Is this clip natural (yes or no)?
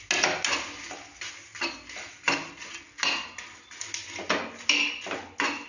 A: yes